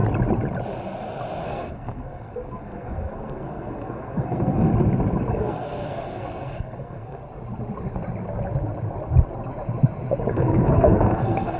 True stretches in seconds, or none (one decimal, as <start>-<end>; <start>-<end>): 0.0-1.4; 4.7-5.3; 7.2-10.3